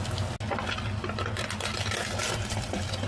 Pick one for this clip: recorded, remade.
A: recorded